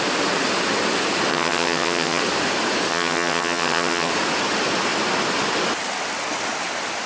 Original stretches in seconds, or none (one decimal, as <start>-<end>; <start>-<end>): 0.0-1.3; 2.2-2.9; 4.1-7.1